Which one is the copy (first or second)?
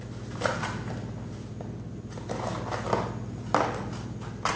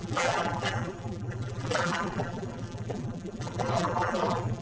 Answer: second